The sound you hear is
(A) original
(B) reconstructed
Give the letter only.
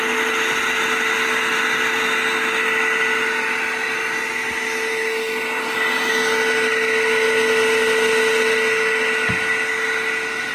A